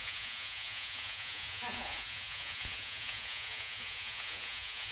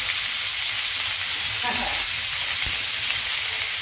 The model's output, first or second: first